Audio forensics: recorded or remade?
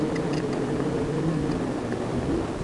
recorded